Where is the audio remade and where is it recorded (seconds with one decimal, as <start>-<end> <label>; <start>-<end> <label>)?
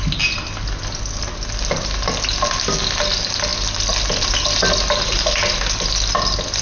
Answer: 0.0-6.6 recorded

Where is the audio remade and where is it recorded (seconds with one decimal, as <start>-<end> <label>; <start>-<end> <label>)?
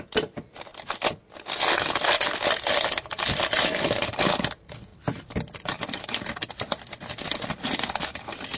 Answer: 0.0-4.9 recorded; 4.9-6.7 remade; 6.7-8.6 recorded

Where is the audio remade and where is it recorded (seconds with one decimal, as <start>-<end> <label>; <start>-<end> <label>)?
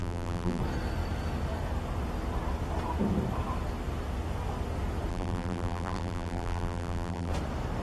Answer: 0.0-0.6 remade; 0.6-5.1 recorded; 5.1-7.3 remade; 7.3-7.8 recorded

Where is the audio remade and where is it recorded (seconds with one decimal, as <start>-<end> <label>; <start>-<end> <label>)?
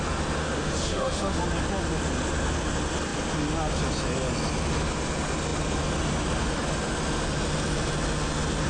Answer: 0.0-0.4 recorded; 0.4-1.4 remade; 1.4-8.7 recorded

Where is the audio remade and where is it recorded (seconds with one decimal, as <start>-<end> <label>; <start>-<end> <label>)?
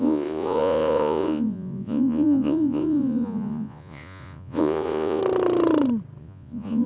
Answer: 0.0-5.2 remade; 5.2-6.2 recorded; 6.2-6.9 remade